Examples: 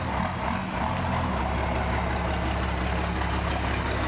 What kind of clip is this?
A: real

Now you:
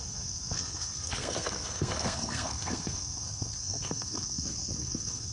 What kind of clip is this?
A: fake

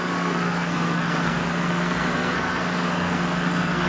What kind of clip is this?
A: fake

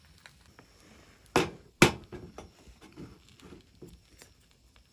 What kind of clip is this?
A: real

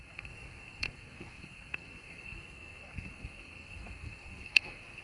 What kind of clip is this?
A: fake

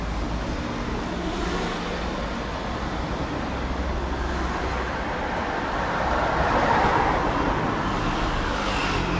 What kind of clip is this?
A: real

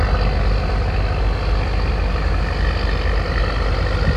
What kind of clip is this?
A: real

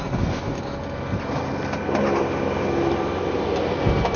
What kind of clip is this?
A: real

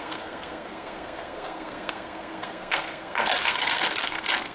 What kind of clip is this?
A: fake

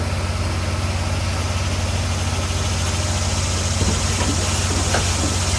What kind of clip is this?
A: real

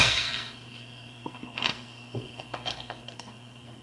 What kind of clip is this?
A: fake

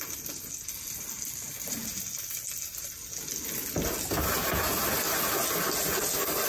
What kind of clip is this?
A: real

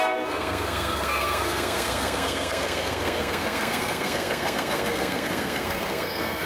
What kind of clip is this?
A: fake